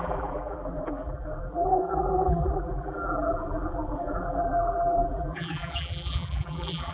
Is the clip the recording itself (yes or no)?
no